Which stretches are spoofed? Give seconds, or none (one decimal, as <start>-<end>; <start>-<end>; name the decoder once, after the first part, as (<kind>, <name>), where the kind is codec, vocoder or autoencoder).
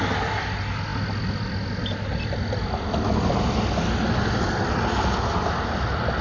none